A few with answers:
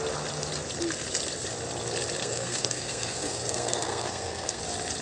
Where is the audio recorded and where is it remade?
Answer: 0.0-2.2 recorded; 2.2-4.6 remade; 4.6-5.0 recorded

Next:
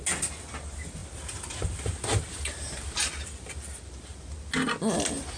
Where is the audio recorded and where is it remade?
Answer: 0.0-5.4 recorded